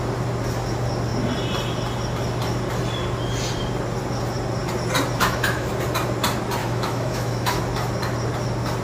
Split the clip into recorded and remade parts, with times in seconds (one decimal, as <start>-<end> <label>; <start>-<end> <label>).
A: 0.0-5.2 recorded; 5.2-5.7 remade; 5.7-6.6 recorded; 6.6-7.6 remade; 7.6-8.8 recorded